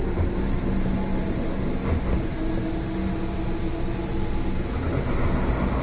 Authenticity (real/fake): real